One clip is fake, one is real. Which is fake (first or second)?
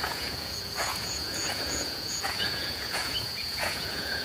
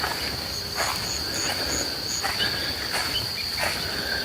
first